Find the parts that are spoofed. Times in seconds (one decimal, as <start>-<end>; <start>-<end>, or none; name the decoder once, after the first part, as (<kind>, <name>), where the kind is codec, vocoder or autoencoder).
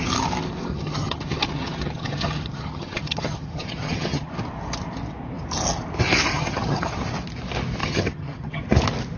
0.7-4.3 (vocoder, HiFi-GAN); 6.3-7.0; 7.8-8.6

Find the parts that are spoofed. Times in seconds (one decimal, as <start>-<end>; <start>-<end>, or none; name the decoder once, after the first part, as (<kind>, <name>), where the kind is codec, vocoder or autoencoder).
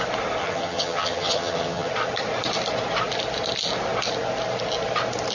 0.4-1.9 (vocoder, HiFi-GAN)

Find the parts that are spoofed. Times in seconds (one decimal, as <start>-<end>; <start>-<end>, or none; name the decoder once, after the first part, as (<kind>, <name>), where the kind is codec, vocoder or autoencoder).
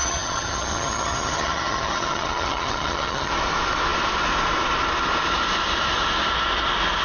0.0-3.3 (vocoder, HiFi-GAN)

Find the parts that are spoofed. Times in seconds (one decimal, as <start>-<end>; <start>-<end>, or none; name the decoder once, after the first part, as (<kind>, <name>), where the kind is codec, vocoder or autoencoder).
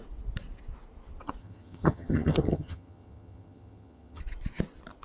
1.4-4.2 (vocoder, HiFi-GAN)